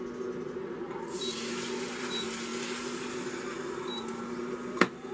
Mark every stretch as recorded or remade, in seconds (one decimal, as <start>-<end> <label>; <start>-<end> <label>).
0.0-5.1 recorded